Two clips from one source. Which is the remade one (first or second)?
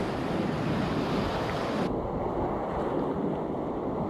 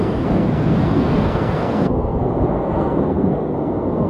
second